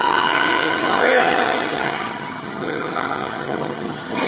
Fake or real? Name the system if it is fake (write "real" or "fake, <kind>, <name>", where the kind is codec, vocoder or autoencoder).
fake, vocoder, HiFi-GAN